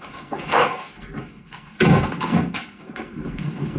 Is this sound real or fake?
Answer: fake